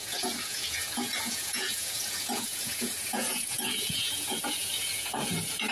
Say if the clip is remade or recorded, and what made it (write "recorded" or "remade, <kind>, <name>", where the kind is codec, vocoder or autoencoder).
remade, vocoder, Vocos